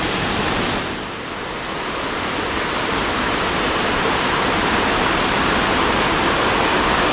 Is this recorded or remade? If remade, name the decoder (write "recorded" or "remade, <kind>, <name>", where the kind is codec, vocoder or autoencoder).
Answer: recorded